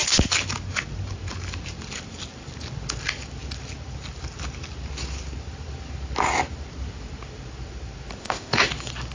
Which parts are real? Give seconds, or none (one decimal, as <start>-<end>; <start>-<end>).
0.0-8.2; 8.7-9.1